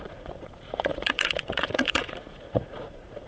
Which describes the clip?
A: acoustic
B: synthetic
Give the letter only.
B